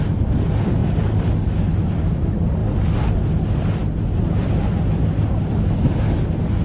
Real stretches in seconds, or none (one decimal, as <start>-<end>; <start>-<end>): 0.0-6.6